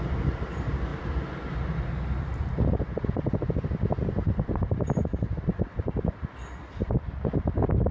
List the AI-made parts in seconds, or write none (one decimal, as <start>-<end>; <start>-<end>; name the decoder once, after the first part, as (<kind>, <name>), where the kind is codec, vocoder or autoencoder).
4.2-5.8 (vocoder, BigVGAN v2)